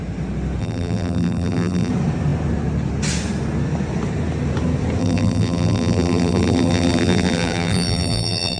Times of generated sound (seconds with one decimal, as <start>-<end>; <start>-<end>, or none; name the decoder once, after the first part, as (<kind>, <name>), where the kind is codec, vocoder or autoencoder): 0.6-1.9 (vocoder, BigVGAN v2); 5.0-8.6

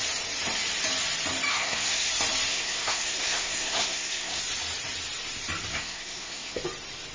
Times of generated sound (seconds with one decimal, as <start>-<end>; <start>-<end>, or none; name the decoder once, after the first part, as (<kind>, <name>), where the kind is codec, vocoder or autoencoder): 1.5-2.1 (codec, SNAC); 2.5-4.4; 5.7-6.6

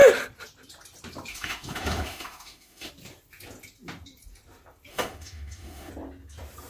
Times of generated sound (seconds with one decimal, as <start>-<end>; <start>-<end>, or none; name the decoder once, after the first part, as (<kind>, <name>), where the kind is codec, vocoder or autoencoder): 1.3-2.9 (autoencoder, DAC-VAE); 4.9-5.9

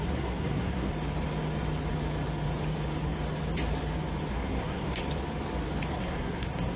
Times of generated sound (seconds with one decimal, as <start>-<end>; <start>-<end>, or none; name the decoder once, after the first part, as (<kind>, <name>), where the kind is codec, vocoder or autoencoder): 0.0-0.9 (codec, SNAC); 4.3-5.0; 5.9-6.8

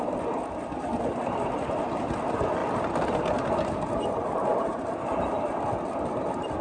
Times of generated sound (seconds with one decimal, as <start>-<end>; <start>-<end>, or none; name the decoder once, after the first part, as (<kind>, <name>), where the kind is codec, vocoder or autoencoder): 4.7-5.5 (vocoder, BigVGAN v2)

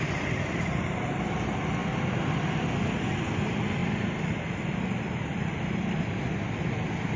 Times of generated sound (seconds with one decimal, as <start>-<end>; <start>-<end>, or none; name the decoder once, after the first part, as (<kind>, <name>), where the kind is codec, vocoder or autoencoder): none